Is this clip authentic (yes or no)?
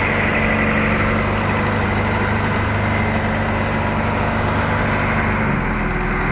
yes